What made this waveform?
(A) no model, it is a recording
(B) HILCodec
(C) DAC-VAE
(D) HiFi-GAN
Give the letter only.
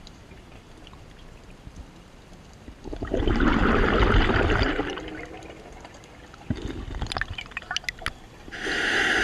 A